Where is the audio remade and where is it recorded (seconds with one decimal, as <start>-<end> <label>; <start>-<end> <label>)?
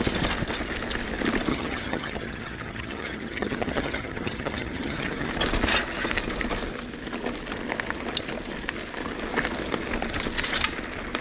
0.0-1.5 recorded; 1.5-5.3 remade; 5.3-11.2 recorded